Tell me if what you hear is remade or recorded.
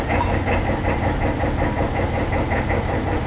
recorded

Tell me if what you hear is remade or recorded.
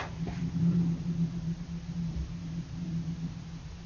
recorded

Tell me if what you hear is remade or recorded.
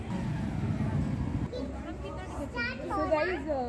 recorded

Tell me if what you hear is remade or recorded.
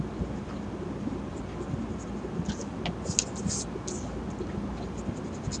recorded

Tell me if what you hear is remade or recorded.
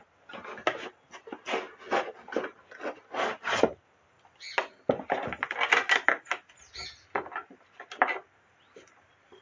recorded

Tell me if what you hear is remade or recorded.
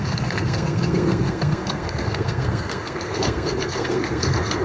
remade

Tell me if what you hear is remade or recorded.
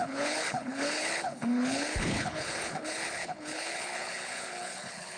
remade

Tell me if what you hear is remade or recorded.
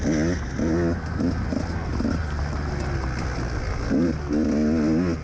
recorded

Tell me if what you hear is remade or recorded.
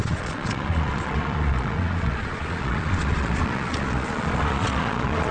remade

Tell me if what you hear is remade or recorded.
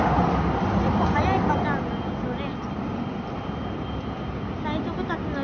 recorded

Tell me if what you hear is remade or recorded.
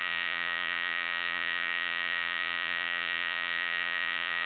remade